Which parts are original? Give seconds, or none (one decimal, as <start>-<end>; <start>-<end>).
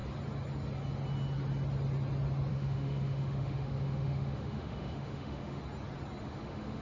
0.0-2.5; 5.6-6.2